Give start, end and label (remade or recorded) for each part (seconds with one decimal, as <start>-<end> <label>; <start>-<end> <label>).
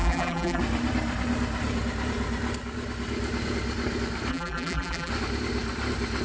0.0-0.6 remade; 0.6-4.3 recorded; 4.3-5.1 remade; 5.1-6.2 recorded